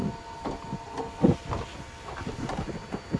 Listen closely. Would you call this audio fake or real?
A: real